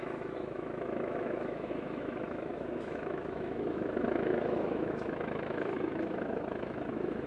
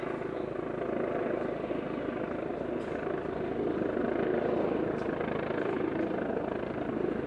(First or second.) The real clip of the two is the second